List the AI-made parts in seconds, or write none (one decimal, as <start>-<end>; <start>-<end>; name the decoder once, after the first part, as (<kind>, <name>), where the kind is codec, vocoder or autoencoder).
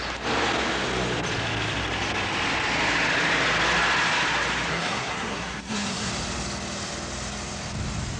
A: 4.7-6.1 (codec, SNAC)